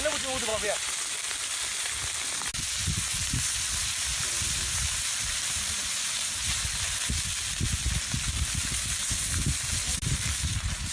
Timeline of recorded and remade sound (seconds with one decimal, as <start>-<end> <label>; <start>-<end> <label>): 0.0-4.3 recorded; 4.3-6.6 remade; 6.6-10.9 recorded